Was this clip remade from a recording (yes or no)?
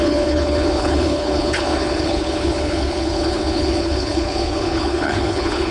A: yes